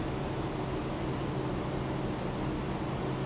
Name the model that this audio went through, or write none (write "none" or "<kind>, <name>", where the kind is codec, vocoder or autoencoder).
none